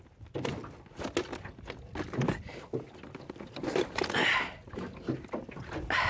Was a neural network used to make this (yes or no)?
no